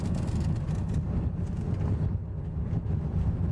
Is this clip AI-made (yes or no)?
no